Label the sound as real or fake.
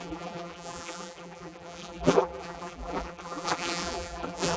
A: fake